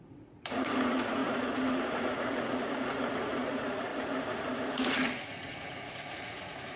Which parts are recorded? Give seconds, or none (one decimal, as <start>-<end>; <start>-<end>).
none

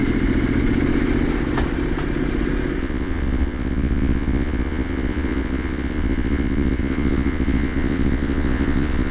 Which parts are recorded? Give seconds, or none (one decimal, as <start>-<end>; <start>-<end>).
0.0-2.8

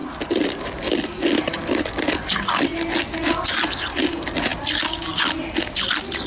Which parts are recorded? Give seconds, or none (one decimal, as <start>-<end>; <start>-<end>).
0.0-6.3

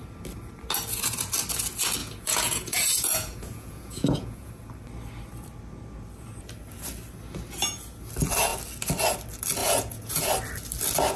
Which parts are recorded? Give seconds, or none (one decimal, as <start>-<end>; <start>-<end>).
0.0-2.0; 4.5-9.6; 10.3-11.2

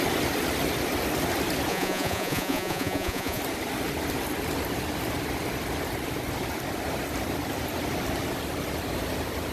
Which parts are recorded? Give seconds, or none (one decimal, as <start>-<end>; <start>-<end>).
0.0-1.7; 3.4-9.5

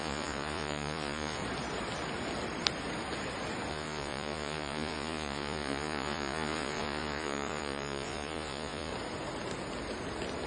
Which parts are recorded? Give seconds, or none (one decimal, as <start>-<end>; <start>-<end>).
1.4-3.7; 8.9-10.5

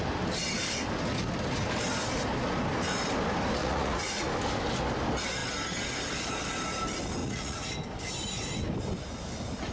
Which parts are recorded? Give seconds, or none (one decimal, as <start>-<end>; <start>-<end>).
0.0-3.6; 4.3-7.2; 7.7-9.7